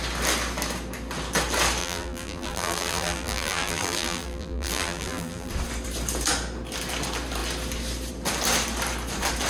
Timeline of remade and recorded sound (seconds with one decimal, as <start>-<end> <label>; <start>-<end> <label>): 0.0-1.8 recorded; 1.8-5.5 remade; 5.5-9.5 recorded